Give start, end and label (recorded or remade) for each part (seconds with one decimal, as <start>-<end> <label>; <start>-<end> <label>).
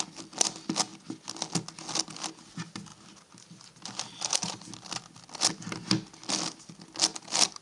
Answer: 0.0-7.6 recorded